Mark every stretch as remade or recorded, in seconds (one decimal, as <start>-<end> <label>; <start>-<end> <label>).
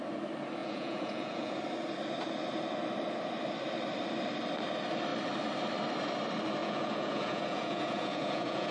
0.0-0.6 recorded; 0.6-1.6 remade; 1.6-6.6 recorded; 6.6-8.7 remade